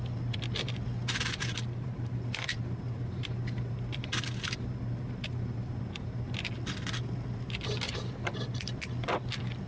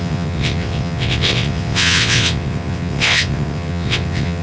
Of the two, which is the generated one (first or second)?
second